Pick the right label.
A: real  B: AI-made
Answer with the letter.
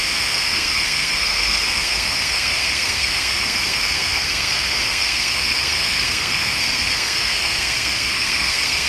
B